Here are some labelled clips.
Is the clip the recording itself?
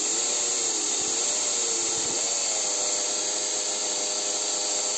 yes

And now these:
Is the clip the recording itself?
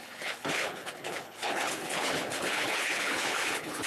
no